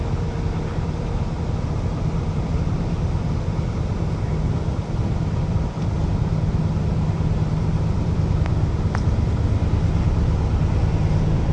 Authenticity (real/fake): real